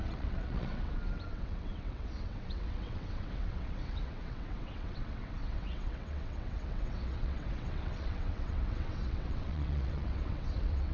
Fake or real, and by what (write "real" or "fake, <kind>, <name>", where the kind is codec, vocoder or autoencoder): fake, vocoder, WaveNeXt